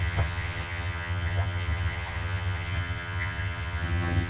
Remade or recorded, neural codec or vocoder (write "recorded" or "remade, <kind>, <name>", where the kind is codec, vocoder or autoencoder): remade, vocoder, HiFi-GAN